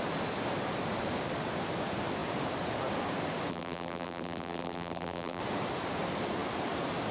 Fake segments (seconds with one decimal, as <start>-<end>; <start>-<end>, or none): 3.5-5.4